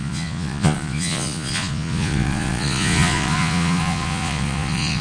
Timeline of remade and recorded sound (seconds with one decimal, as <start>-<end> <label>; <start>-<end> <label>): 0.0-5.0 remade